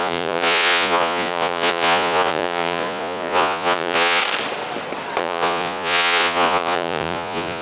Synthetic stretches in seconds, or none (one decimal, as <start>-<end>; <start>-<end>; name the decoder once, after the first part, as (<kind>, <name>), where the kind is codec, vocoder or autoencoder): 0.0-4.2 (vocoder, Vocos); 5.2-7.6